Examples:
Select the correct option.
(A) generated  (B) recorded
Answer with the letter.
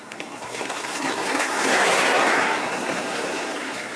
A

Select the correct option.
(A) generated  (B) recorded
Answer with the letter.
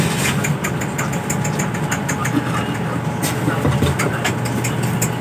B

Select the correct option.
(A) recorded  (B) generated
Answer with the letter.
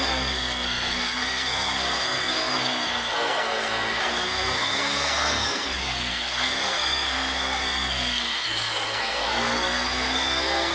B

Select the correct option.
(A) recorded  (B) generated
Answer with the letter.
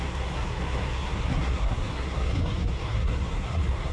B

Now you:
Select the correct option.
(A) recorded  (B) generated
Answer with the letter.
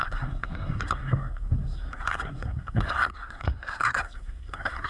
B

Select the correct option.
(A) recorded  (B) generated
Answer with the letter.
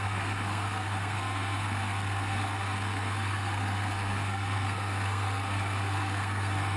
B